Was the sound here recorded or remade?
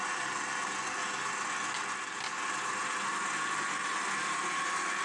recorded